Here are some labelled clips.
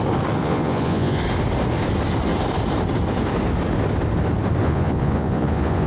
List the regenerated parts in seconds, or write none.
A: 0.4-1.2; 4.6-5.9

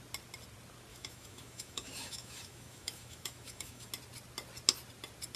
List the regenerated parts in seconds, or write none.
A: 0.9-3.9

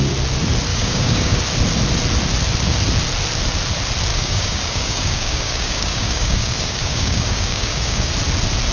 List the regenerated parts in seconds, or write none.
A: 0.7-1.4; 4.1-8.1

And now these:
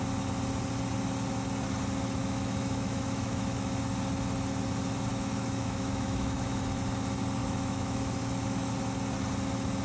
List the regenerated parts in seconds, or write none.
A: 2.2-3.8; 5.1-6.6; 7.4-8.7

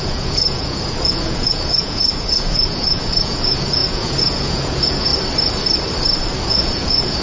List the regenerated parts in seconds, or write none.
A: 0.0-5.1; 6.4-7.2

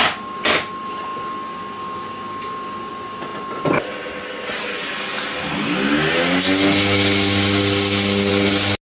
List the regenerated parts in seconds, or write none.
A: none